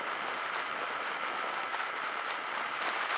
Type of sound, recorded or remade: recorded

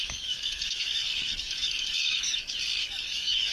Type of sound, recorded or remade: remade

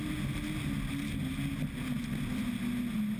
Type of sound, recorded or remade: recorded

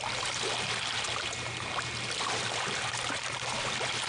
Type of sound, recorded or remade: recorded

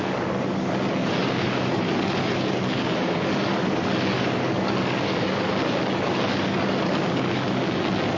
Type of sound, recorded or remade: remade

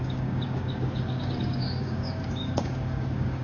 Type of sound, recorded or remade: remade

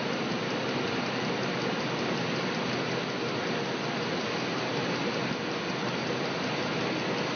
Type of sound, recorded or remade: recorded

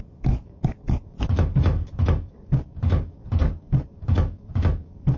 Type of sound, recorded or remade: remade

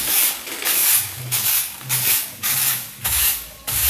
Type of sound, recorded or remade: remade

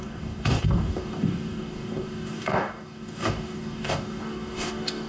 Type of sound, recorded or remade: remade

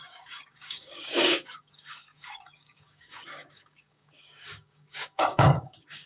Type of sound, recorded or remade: remade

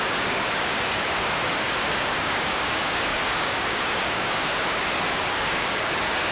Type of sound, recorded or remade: remade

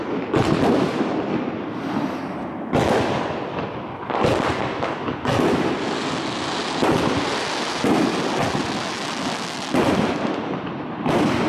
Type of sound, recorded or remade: recorded